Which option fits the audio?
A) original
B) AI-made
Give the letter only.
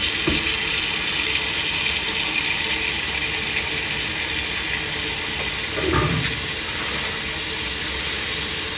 A